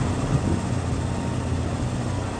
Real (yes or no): yes